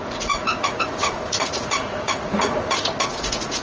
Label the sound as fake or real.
fake